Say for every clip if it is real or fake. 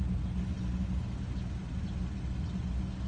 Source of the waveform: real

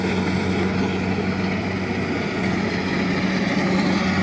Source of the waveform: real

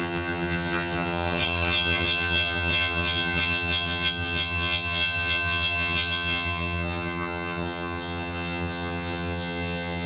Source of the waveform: fake